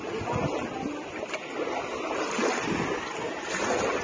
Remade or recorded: recorded